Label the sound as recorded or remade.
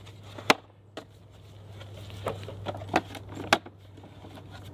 recorded